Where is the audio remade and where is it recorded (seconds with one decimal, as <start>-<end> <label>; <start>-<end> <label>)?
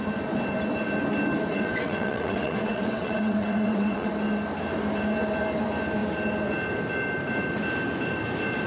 0.0-1.5 recorded; 1.5-4.1 remade; 4.1-8.7 recorded